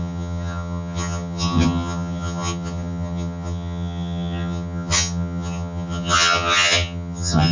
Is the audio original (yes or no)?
no